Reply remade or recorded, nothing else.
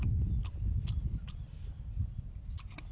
recorded